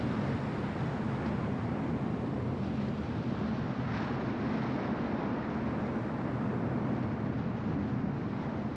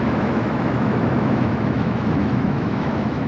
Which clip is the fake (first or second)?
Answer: second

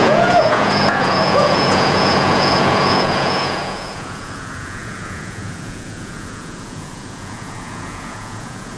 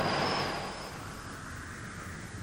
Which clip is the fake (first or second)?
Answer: first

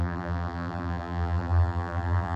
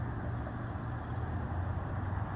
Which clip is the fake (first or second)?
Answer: first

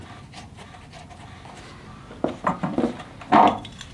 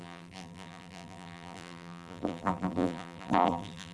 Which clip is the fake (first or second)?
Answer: second